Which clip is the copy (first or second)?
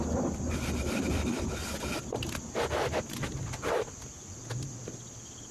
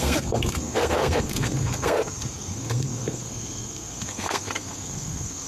second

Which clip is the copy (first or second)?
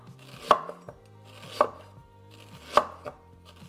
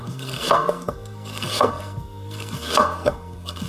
second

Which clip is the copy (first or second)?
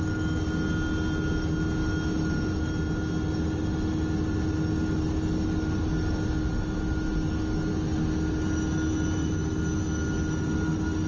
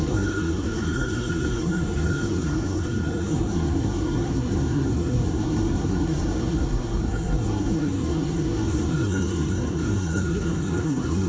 second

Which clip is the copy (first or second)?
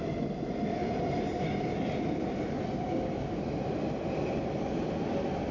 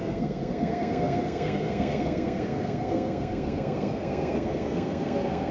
second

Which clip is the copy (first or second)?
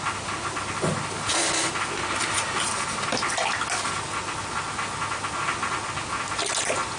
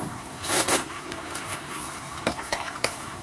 second